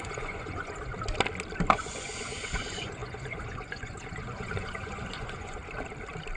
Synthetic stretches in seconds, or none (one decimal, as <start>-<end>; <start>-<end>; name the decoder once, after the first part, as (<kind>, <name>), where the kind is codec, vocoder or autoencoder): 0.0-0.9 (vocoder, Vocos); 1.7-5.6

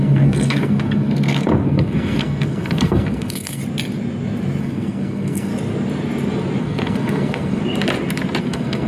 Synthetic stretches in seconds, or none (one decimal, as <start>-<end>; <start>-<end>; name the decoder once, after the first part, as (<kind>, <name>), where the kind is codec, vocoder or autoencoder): 0.0-3.6 (codec, SNAC); 4.6-5.5; 6.6-7.6; 8.4-8.9

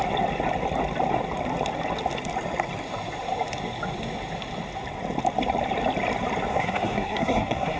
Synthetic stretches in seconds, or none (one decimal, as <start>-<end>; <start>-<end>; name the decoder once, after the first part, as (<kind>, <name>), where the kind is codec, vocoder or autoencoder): 6.5-7.8 (codec, SNAC)